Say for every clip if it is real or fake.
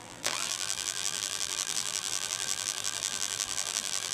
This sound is fake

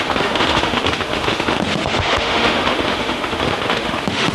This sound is fake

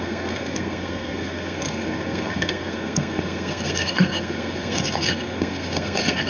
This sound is fake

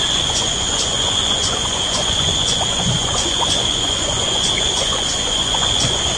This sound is fake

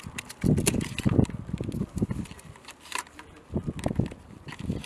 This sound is real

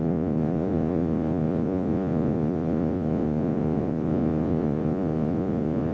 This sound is fake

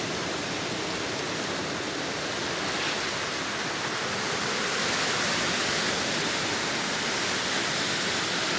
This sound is real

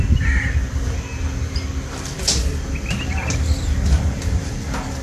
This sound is real